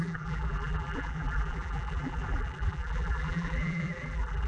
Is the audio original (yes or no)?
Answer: no